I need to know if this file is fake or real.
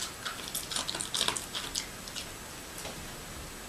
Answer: real